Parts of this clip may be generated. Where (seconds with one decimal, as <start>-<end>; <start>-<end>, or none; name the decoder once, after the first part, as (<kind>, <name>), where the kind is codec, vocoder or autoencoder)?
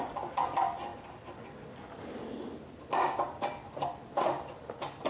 none